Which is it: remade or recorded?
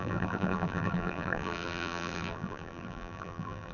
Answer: remade